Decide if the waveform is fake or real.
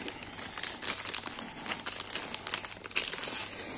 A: real